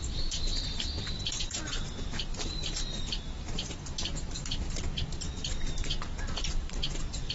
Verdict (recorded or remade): remade